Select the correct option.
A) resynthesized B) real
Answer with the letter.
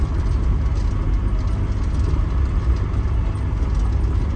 B